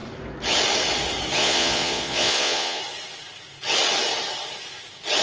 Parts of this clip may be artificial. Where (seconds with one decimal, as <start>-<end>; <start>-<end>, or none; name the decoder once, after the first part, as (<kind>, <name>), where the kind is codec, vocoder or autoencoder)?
1.4-2.8 (vocoder, Vocos)